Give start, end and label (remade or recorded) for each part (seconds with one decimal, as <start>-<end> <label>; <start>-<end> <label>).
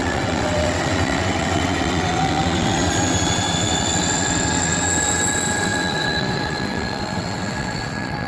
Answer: 0.0-8.3 remade